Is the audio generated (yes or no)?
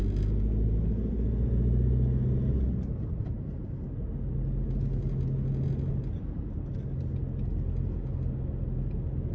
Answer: no